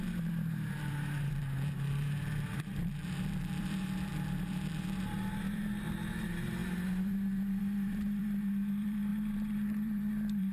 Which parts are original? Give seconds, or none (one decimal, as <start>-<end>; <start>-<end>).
none